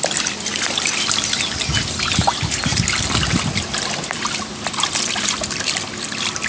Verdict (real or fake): real